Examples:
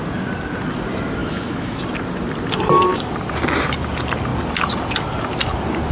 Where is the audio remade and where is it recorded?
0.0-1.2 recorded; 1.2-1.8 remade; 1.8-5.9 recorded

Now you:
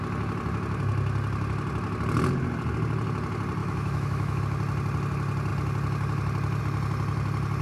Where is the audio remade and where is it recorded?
0.0-3.6 recorded; 3.6-4.4 remade; 4.4-7.6 recorded

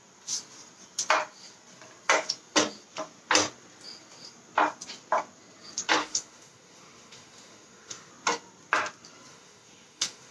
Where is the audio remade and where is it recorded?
0.0-6.0 recorded; 6.0-8.1 remade; 8.1-9.3 recorded; 9.3-10.3 remade

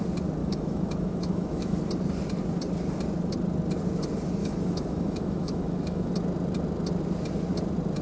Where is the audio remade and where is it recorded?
0.0-0.4 recorded; 0.4-1.8 remade; 1.8-4.4 recorded; 4.4-6.1 remade; 6.1-8.0 recorded

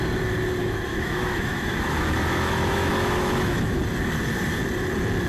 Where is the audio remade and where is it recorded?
0.0-0.6 recorded; 0.6-3.8 remade; 3.8-5.3 recorded

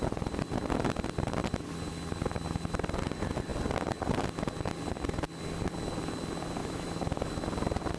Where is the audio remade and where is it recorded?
0.0-6.6 recorded; 6.6-7.3 remade; 7.3-8.0 recorded